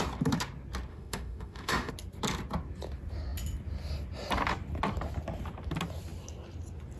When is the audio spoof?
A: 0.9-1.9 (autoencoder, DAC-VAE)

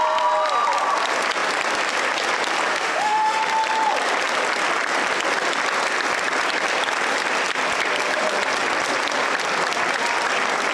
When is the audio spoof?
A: 2.7-3.4 (autoencoder, DAC-VAE)

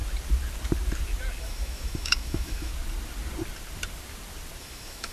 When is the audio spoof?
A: 1.4-2.7 (autoencoder, DAC-VAE); 4.6-5.1

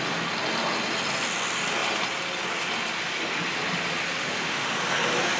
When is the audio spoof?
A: 4.2-4.7 (autoencoder, DAC-VAE)

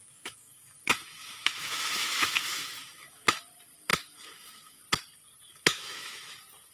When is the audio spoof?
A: 0.0-3.4 (autoencoder, DAC-VAE); 3.9-4.8; 5.5-6.3

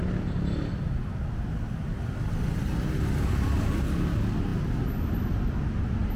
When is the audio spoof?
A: none